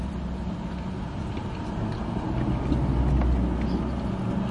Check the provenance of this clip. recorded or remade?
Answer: recorded